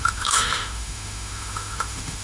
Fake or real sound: fake